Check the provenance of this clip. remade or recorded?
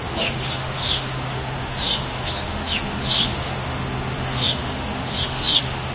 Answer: remade